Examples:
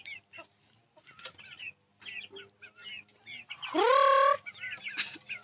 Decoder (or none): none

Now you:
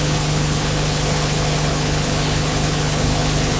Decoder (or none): codec, HILCodec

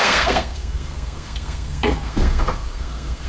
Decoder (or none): codec, SNAC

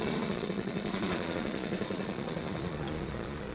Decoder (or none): vocoder, Vocos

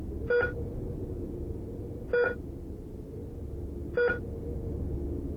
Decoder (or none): none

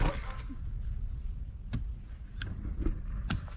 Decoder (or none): none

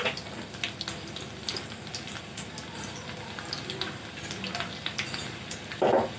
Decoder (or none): none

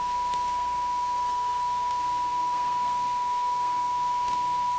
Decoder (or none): codec, SNAC